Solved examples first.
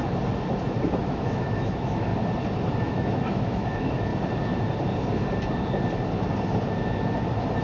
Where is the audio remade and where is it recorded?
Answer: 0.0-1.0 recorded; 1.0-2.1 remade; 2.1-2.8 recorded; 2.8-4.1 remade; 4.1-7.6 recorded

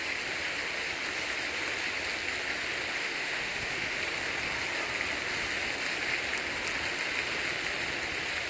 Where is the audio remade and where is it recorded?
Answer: 0.0-3.0 recorded; 3.0-4.0 remade; 4.0-8.5 recorded

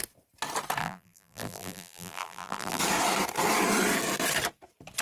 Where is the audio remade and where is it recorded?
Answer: 0.0-0.8 recorded; 0.8-2.8 remade; 2.8-5.0 recorded